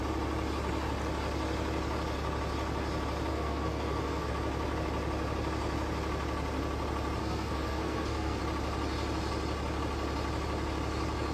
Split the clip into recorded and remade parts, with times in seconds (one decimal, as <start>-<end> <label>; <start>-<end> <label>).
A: 0.0-3.3 recorded; 3.3-4.3 remade; 4.3-7.2 recorded; 7.2-8.4 remade; 8.4-11.3 recorded